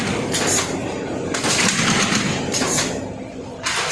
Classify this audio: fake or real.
fake